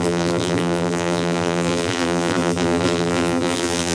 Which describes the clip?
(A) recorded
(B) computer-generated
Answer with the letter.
B